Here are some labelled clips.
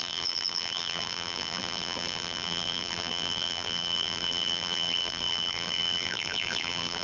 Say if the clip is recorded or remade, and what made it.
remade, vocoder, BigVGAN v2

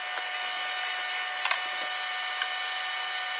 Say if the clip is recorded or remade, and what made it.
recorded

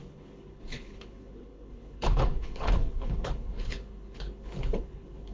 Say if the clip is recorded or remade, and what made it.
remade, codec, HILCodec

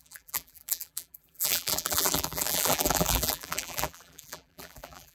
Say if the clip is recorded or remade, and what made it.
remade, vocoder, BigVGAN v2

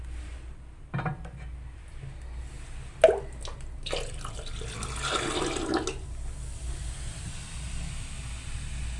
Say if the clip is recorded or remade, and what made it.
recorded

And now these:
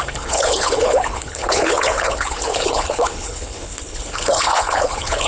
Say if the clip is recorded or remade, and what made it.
remade, codec, HILCodec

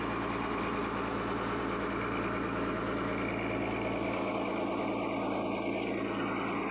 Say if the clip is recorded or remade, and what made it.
recorded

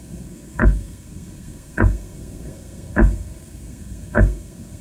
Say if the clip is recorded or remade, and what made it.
remade, codec, SNAC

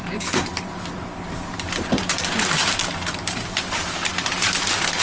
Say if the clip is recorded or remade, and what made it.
remade, vocoder, BigVGAN v2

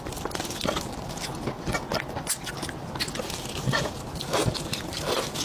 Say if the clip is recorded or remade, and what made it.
recorded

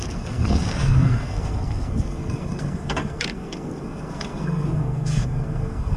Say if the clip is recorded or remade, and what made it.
remade, codec, SNAC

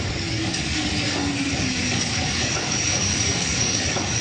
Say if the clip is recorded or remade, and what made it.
remade, codec, DAC